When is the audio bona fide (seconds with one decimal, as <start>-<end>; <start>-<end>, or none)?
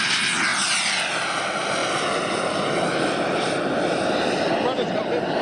0.0-5.4